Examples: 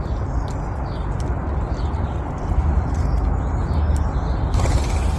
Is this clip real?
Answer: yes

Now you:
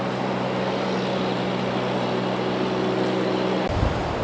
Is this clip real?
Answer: yes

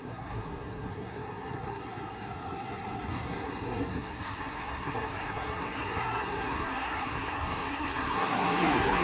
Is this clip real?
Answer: no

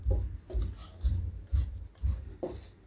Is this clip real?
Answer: yes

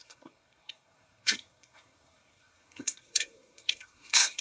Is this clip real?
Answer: no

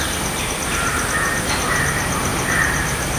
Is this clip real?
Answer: yes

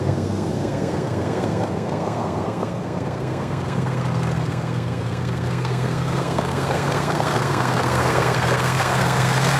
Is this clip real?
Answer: no